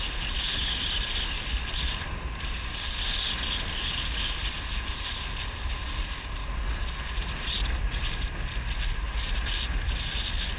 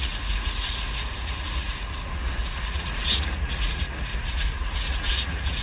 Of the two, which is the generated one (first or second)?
second